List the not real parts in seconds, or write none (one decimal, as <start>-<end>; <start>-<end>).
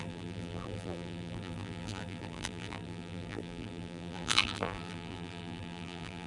0.0-6.3